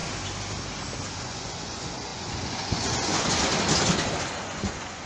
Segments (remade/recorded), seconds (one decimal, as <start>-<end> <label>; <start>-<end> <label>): 0.0-1.2 recorded; 1.2-3.5 remade; 3.5-4.2 recorded; 4.2-5.1 remade